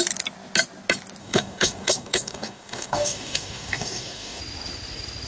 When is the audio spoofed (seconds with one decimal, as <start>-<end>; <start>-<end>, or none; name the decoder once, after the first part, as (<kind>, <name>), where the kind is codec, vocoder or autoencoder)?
1.2-4.4 (codec, DAC)